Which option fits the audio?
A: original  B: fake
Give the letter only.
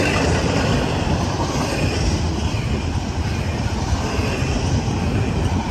A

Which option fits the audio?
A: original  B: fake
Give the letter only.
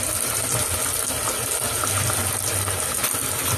A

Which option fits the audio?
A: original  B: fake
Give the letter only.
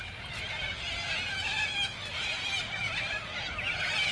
A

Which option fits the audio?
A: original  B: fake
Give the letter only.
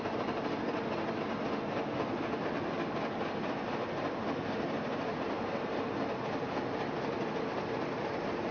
A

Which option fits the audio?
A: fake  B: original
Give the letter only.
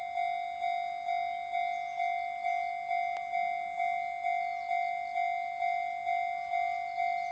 B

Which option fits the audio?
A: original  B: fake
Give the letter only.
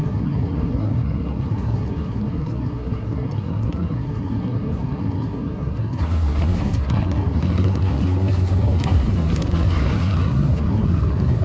B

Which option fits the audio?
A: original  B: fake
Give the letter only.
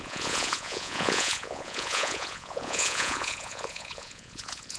B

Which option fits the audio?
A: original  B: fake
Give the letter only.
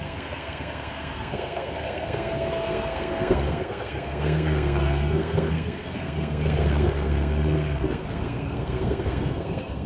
B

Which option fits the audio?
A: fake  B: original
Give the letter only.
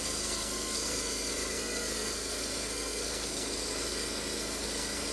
A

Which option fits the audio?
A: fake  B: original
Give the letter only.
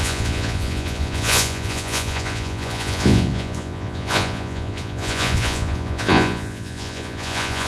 A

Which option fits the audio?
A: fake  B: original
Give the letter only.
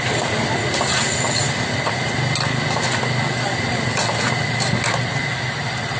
B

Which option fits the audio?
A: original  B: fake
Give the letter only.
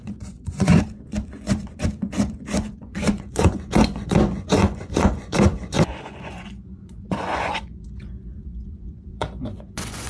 B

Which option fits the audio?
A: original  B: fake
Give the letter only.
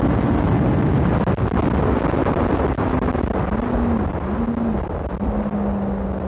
A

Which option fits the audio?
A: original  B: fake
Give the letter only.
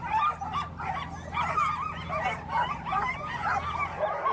A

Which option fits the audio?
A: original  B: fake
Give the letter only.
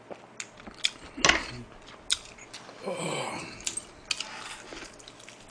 A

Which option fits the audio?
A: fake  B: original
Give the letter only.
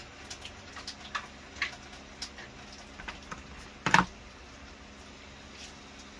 B